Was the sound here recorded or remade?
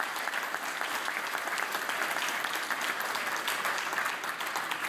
recorded